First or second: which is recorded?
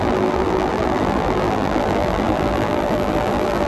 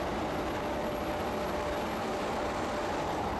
second